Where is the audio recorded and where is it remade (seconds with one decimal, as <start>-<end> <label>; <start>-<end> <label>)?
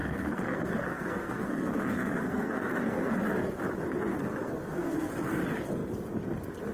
0.0-3.1 remade; 3.1-4.1 recorded; 4.1-5.1 remade; 5.1-6.7 recorded